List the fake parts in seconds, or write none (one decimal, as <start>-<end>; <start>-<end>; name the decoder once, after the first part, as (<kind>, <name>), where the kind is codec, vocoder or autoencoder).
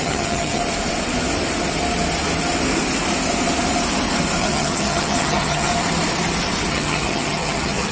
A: 0.0-0.6 (vocoder, HiFi-GAN); 4.4-5.7; 6.7-7.9